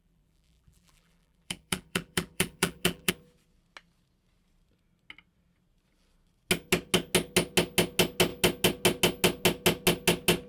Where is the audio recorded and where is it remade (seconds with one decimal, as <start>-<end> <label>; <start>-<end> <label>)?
0.0-3.1 remade; 3.1-10.5 recorded